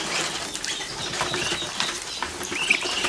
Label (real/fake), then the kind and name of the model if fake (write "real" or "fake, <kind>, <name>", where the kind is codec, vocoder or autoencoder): fake, vocoder, BigVGAN v2